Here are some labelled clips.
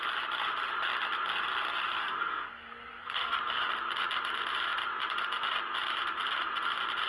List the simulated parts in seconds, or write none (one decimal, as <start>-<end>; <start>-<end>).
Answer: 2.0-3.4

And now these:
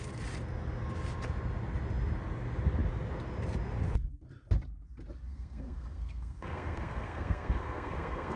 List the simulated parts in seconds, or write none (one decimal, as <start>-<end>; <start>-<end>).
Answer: 5.3-8.4

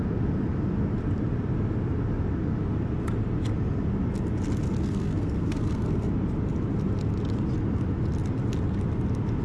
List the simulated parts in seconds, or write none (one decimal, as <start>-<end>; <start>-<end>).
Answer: 4.8-6.1

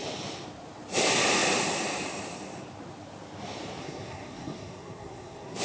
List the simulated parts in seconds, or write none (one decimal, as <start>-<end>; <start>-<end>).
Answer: 3.8-5.6